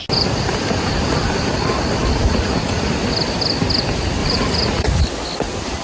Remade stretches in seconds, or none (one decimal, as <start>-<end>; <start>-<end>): 2.3-2.9; 4.2-5.0